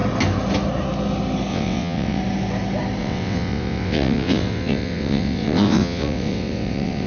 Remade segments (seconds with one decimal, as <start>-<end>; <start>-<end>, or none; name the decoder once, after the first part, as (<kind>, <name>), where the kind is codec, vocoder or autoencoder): 1.5-2.2 (vocoder, WaveNeXt); 3.0-7.1